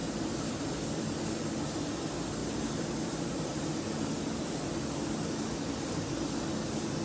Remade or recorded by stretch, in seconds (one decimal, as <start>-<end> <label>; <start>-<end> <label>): 0.0-0.7 remade; 0.7-2.4 recorded; 2.4-4.6 remade; 4.6-7.0 recorded